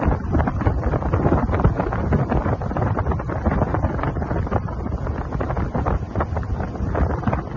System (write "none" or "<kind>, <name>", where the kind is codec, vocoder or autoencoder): vocoder, BigVGAN v2